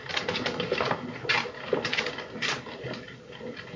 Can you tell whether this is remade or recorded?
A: recorded